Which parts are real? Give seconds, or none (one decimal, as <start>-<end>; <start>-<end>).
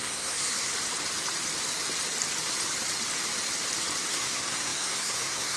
0.7-4.1